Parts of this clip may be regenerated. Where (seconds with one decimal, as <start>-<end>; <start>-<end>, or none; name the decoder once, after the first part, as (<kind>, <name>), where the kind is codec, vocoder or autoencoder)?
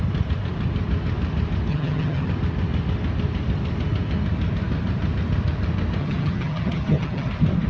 1.7-2.3 (vocoder, HiFi-GAN); 6.0-7.3